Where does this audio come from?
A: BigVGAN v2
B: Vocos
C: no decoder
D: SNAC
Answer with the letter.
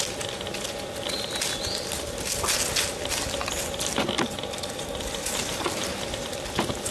C